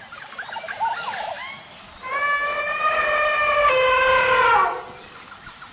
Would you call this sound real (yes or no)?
yes